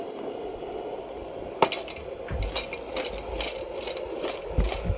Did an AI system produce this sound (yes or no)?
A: no